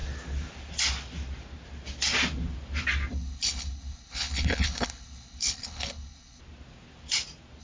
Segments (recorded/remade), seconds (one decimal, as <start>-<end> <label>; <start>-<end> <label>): 0.0-3.1 recorded; 3.1-6.4 remade; 6.4-7.6 recorded